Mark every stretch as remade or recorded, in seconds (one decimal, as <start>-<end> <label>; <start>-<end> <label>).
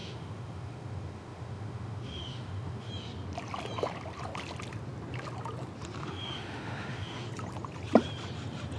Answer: 0.0-2.9 remade; 2.9-6.0 recorded; 6.0-7.3 remade; 7.3-8.8 recorded